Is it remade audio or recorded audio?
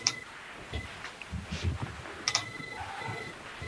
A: recorded